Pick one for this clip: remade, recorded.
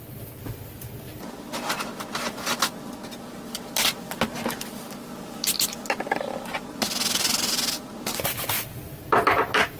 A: recorded